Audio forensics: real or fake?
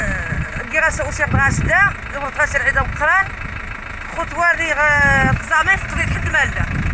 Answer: real